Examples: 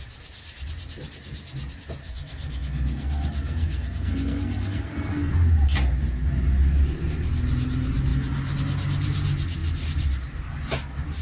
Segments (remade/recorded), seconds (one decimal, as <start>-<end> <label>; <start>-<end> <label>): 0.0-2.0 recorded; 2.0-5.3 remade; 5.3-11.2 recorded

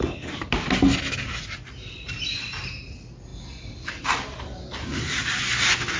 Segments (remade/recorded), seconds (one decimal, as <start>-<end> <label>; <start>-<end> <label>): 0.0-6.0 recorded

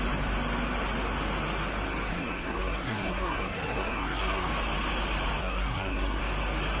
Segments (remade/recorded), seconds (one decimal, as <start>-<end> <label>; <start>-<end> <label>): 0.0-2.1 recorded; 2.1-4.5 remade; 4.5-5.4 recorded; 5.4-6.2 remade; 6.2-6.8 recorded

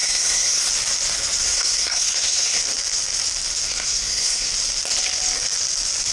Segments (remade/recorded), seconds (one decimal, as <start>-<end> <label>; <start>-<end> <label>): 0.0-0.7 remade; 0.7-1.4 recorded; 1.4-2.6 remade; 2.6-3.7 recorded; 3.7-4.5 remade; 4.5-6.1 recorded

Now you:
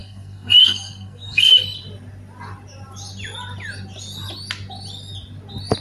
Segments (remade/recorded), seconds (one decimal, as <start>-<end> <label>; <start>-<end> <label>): 0.0-1.5 remade; 1.5-5.8 recorded